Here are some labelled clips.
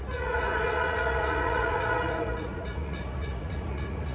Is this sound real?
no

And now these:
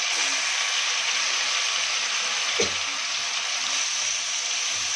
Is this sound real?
no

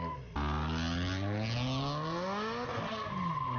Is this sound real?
yes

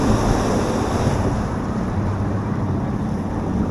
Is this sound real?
yes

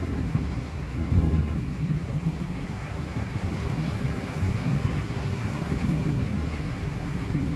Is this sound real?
no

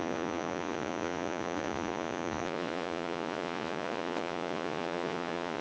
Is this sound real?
no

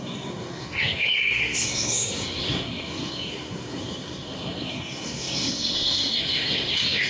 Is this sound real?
no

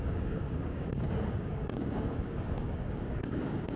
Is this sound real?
no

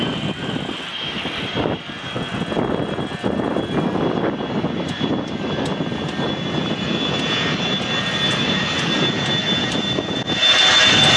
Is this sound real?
yes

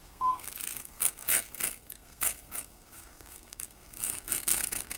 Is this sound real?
no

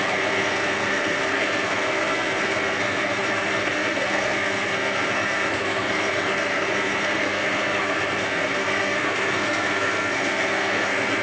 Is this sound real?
no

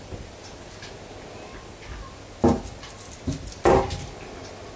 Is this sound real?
yes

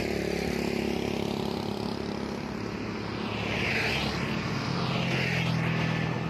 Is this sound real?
yes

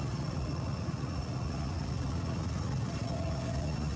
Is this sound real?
no